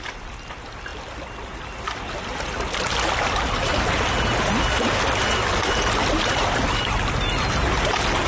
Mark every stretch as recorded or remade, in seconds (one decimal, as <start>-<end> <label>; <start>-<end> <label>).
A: 0.0-8.3 recorded